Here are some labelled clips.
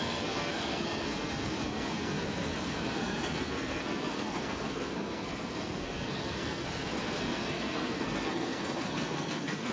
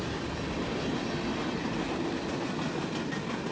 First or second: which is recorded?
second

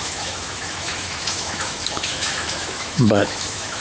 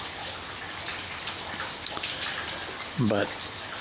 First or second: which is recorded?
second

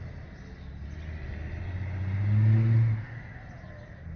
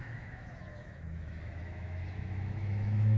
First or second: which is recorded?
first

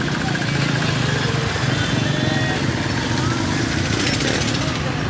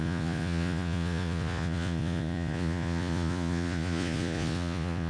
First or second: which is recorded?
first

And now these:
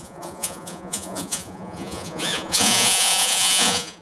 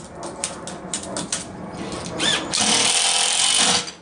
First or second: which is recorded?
second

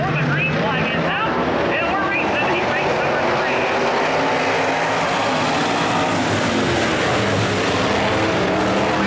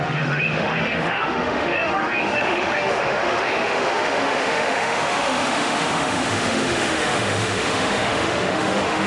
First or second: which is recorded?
first